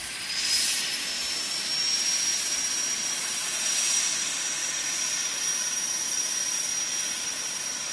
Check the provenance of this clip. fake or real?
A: real